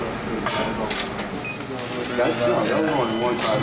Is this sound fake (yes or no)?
no